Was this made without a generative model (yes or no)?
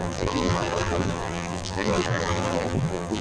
no